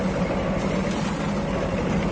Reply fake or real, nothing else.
real